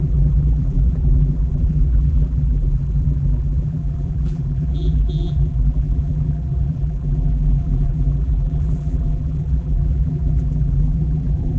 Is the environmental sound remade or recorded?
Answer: remade